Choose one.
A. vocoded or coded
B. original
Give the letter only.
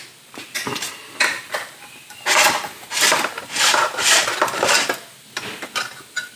A